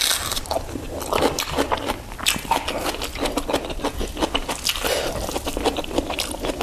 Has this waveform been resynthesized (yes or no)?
no